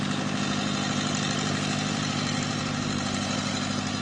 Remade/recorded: recorded